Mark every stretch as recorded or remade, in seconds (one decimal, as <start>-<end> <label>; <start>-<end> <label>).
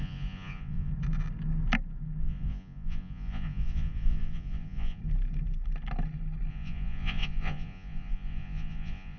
0.0-0.9 remade; 0.9-2.2 recorded; 2.2-5.0 remade; 5.0-6.5 recorded; 6.5-9.2 remade